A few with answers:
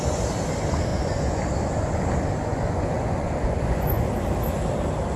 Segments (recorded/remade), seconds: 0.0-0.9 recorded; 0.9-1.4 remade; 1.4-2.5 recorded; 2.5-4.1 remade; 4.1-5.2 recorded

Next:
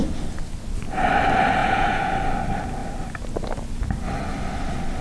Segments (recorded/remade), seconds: 0.0-1.6 recorded; 1.6-2.1 remade; 2.1-5.0 recorded

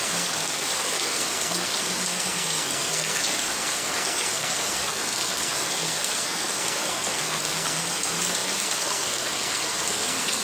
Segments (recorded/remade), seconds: 0.0-10.4 remade